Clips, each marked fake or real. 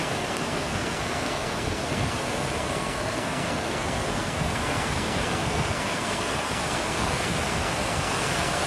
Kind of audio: fake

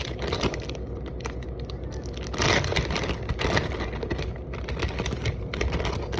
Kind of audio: real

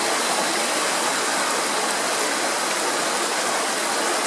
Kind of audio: real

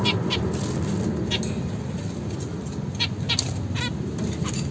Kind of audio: real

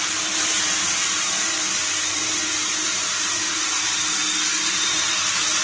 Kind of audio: fake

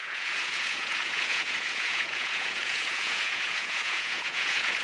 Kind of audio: fake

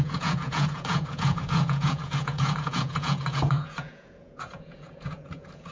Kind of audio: fake